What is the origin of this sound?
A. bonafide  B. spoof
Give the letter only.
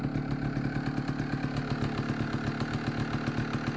A